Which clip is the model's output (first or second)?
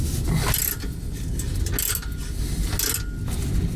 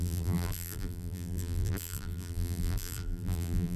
second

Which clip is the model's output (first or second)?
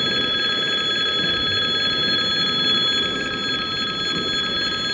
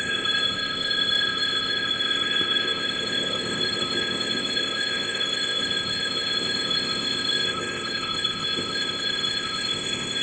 second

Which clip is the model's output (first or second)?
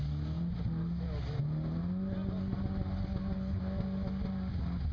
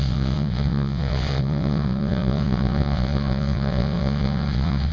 second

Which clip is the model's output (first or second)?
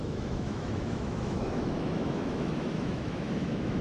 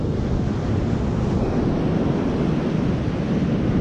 first